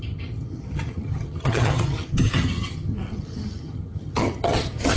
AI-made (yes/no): yes